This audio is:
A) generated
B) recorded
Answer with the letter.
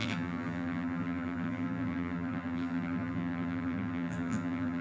A